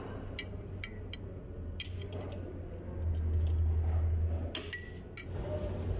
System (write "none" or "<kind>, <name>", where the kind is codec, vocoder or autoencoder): none